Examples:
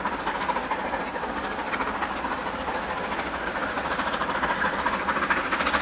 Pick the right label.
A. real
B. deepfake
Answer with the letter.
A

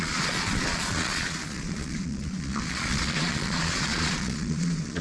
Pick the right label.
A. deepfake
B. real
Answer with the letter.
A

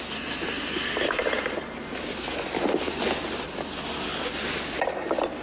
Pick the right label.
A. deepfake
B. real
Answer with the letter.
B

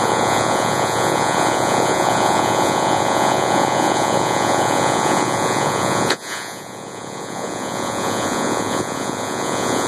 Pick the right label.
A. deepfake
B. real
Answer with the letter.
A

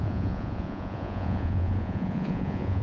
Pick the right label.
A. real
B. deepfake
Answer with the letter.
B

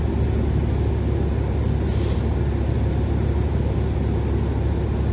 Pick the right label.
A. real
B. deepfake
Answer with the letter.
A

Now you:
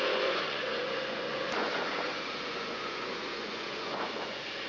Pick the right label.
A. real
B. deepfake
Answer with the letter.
B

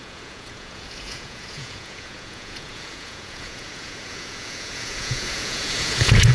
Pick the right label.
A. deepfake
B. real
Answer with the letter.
A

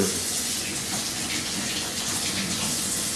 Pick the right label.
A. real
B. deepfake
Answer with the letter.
B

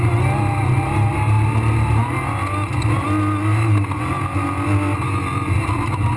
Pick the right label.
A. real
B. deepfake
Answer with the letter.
A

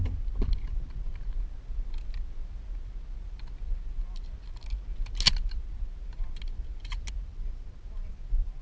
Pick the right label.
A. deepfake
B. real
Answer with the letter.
B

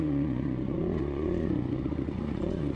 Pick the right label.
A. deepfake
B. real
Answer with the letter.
A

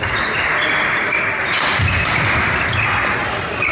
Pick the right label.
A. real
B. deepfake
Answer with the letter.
A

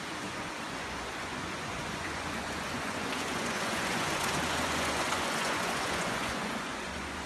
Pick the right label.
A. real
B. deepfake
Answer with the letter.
B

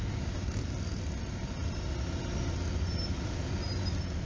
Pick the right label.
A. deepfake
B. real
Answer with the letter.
B